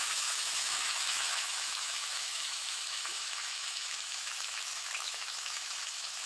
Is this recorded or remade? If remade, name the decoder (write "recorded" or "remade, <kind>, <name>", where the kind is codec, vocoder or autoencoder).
remade, autoencoder, DAC-VAE